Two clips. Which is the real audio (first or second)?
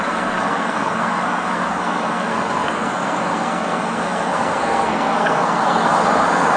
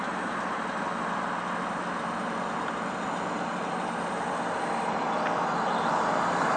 second